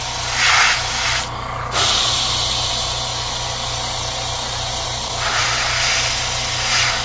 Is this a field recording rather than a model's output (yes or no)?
yes